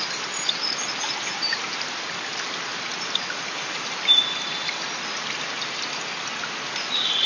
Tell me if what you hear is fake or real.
real